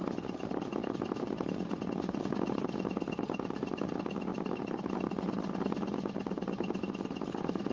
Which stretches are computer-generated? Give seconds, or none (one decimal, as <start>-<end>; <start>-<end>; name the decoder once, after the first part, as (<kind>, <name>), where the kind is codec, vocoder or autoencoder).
none